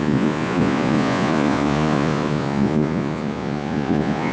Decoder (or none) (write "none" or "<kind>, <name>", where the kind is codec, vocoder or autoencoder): vocoder, Vocos